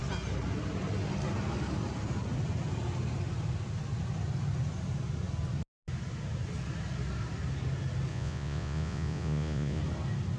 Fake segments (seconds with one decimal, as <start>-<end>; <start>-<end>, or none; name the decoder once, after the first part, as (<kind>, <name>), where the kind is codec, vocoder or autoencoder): 8.1-9.8 (vocoder, Vocos)